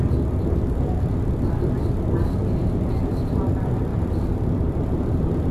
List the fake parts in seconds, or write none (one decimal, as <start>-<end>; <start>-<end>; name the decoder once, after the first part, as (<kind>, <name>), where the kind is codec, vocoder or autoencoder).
2.4-3.3 (vocoder, BigVGAN v2); 3.9-5.1